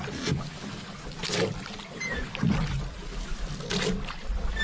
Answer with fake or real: real